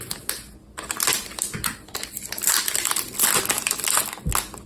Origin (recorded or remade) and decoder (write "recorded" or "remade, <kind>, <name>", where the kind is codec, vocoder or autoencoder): recorded